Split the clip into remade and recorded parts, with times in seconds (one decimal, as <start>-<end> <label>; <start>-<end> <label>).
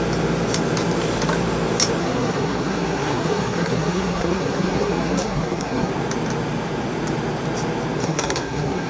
0.0-2.0 recorded; 2.0-5.9 remade; 5.9-8.0 recorded; 8.0-8.9 remade